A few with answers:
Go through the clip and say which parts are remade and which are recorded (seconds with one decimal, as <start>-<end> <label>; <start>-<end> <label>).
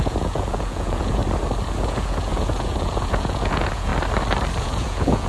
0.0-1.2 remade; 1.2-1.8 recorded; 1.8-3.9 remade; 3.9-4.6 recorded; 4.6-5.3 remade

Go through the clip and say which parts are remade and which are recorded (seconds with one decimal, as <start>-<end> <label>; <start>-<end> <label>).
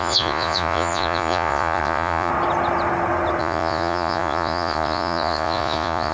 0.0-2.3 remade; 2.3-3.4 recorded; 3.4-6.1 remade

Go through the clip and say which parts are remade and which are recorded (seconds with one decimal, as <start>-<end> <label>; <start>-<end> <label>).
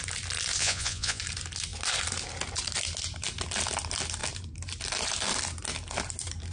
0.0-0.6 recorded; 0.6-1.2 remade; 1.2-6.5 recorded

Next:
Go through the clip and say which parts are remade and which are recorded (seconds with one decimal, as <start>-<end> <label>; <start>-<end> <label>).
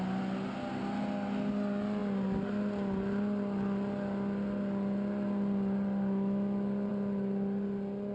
0.0-8.1 recorded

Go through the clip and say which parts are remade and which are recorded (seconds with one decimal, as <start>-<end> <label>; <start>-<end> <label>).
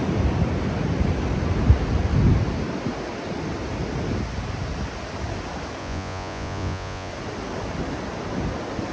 0.0-5.8 recorded; 5.8-7.1 remade; 7.1-8.9 recorded